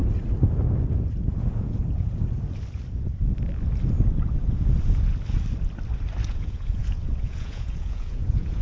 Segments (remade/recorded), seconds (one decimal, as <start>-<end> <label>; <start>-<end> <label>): 0.0-1.4 recorded; 1.4-1.8 remade; 1.8-6.3 recorded; 6.3-8.6 remade